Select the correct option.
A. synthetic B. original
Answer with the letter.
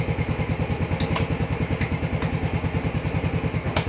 B